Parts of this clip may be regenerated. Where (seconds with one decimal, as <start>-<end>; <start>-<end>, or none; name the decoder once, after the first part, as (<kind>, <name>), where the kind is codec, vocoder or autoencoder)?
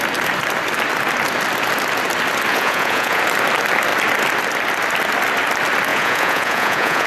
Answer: 2.5-3.2 (vocoder, Vocos); 5.9-7.1